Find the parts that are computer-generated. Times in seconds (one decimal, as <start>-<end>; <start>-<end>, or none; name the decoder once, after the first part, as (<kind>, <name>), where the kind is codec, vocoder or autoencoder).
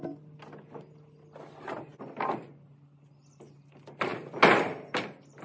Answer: none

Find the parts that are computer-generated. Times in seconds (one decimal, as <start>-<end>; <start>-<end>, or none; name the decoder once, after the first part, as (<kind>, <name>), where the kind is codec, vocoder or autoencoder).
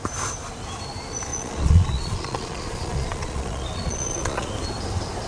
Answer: 1.3-4.5 (vocoder, Vocos)